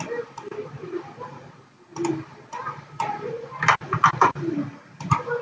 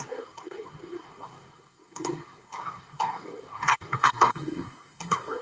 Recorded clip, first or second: first